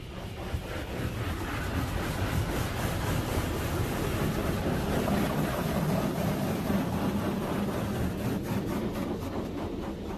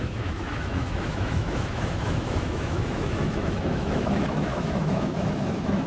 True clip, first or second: first